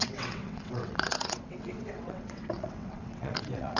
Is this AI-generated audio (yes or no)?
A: yes